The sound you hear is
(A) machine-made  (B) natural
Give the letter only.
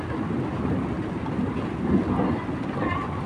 B